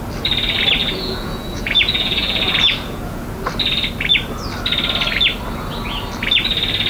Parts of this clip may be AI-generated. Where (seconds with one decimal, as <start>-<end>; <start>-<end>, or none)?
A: 0.8-3.2